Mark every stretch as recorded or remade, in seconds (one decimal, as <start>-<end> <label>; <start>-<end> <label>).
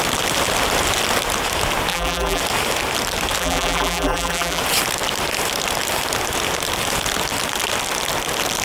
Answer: 0.0-1.9 recorded; 1.9-2.4 remade; 2.4-3.4 recorded; 3.4-4.6 remade; 4.6-8.6 recorded